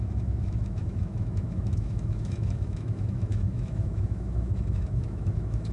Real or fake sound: fake